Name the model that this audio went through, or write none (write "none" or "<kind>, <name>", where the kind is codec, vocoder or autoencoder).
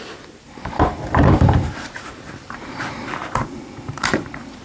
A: vocoder, BigVGAN v2